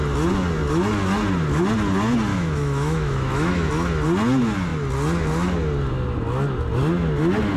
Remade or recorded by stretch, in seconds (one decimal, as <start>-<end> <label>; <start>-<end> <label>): 0.0-2.3 recorded; 2.3-3.7 remade; 3.7-7.6 recorded

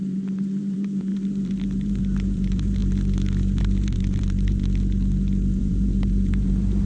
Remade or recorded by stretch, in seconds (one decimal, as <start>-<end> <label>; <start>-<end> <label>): 0.0-2.8 remade; 2.8-3.6 recorded; 3.6-4.6 remade; 4.6-5.6 recorded; 5.6-6.9 remade

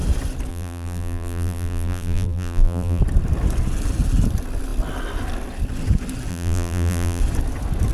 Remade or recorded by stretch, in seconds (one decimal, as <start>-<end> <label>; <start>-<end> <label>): 0.0-0.5 recorded; 0.5-3.0 remade; 3.0-6.3 recorded; 6.3-7.2 remade; 7.2-7.9 recorded

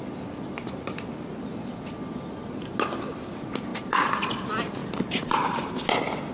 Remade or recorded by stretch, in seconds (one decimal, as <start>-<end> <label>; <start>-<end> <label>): 0.0-3.7 recorded; 3.7-4.3 remade; 4.3-4.8 recorded; 4.8-5.7 remade; 5.7-6.3 recorded